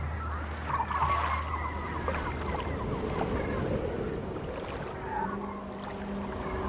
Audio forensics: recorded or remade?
recorded